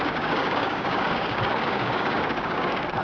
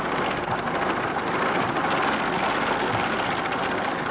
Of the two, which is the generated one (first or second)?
first